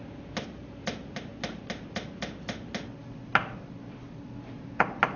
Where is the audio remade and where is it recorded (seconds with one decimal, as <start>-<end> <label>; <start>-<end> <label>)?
0.0-5.2 recorded